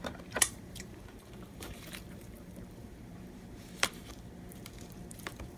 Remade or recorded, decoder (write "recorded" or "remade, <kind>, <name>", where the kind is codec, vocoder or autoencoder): remade, vocoder, BigVGAN v2